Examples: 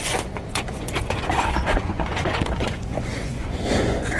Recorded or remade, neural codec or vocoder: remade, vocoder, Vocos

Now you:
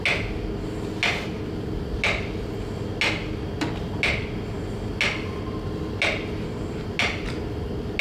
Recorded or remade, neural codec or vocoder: recorded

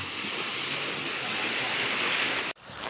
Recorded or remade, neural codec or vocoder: recorded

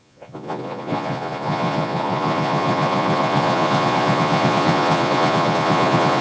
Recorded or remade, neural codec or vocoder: remade, vocoder, Vocos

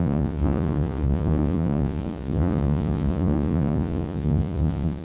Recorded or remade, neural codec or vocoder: remade, vocoder, Vocos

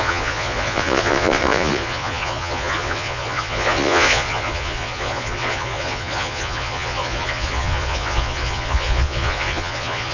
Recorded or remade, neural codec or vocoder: remade, vocoder, Vocos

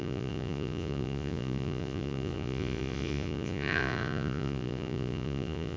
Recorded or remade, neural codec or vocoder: remade, vocoder, Vocos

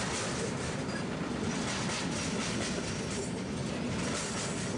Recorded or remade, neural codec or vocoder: recorded